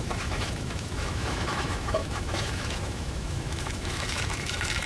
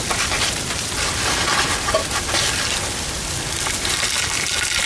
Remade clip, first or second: first